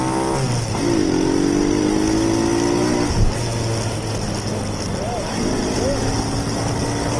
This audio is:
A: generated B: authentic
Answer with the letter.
B